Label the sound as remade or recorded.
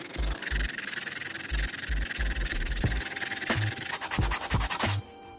recorded